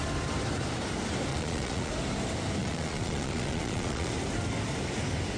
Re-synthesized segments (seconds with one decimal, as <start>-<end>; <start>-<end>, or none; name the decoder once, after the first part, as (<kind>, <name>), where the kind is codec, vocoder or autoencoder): 1.3-1.9 (vocoder, Vocos); 2.6-4.1